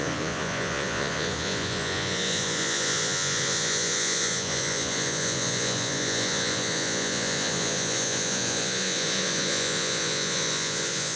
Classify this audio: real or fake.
fake